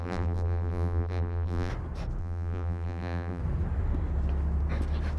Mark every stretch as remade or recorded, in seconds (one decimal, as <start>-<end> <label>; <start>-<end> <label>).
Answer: 0.0-1.7 remade; 1.7-2.2 recorded; 2.2-3.4 remade; 3.4-5.2 recorded